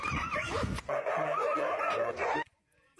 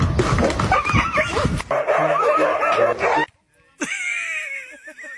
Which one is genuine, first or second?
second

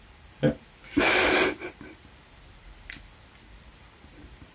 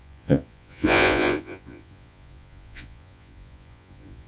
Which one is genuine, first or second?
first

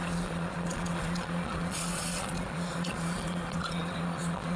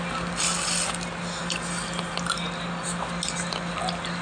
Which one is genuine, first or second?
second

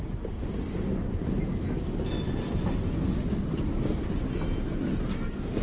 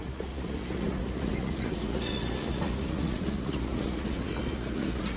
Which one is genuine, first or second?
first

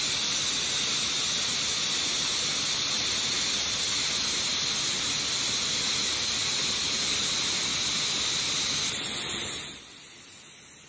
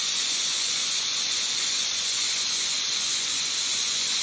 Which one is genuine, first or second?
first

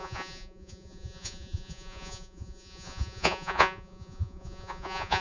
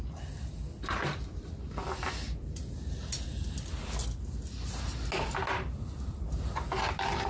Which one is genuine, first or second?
second